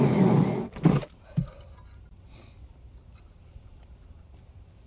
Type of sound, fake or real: real